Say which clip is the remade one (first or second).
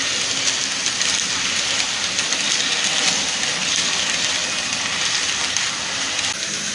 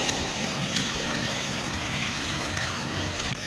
second